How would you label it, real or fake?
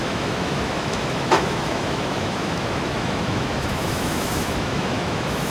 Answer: fake